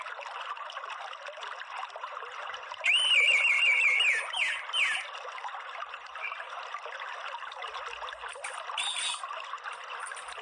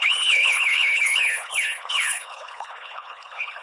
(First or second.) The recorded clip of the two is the first